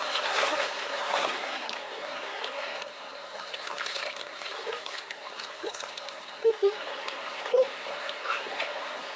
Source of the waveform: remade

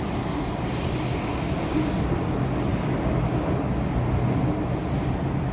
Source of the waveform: recorded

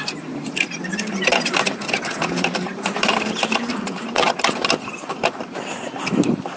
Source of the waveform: remade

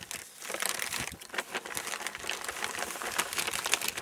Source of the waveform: recorded